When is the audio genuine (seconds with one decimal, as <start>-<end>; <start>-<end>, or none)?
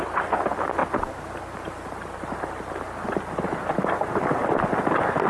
0.0-5.3